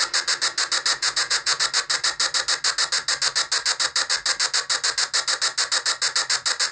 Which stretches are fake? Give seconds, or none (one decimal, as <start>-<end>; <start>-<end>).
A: 0.9-1.6